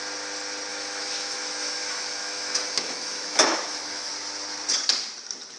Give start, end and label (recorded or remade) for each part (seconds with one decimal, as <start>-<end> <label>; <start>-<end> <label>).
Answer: 0.0-0.7 recorded; 0.7-4.1 remade; 4.1-5.6 recorded